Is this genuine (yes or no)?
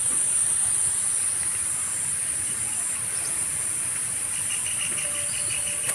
yes